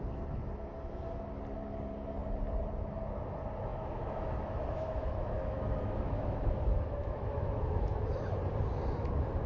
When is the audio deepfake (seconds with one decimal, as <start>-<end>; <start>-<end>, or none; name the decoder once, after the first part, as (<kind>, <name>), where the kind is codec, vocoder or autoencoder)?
3.7-8.4 (autoencoder, DAC-VAE)